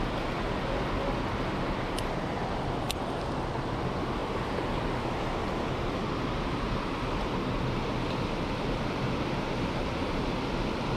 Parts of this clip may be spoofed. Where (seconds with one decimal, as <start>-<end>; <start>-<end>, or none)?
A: none